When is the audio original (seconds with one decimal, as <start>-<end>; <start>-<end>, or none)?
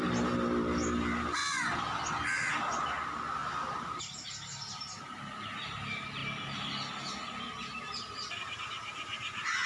6.2-8.3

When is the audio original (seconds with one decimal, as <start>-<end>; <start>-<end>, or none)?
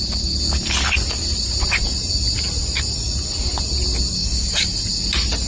0.0-4.2; 4.8-5.5